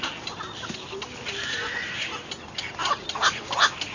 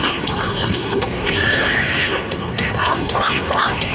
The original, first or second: first